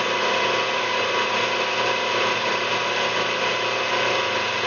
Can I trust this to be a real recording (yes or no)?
yes